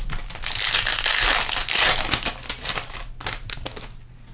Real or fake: real